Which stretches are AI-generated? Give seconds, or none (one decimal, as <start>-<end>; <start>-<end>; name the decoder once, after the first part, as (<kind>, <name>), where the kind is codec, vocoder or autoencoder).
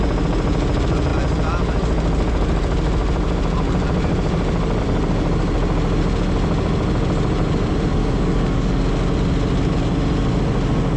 8.0-8.8 (codec, DAC)